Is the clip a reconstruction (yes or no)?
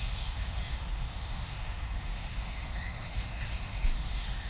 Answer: yes